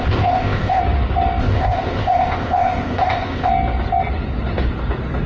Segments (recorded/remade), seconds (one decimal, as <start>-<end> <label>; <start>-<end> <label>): 0.0-0.8 remade; 0.8-1.4 recorded; 1.4-3.5 remade; 3.5-5.3 recorded